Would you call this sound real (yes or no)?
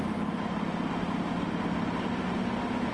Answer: yes